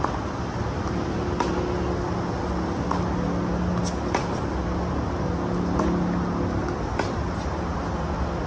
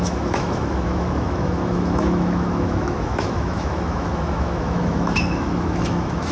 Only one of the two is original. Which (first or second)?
first